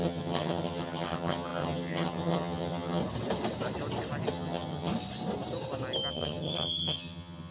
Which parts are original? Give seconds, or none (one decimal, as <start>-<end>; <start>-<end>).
3.0-4.3; 4.9-6.1